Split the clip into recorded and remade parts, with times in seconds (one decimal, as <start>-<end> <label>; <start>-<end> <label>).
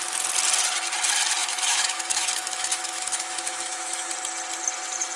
0.0-1.4 recorded; 1.4-4.1 remade; 4.1-5.2 recorded